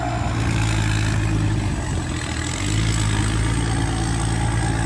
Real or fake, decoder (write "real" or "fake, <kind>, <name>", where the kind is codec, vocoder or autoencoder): real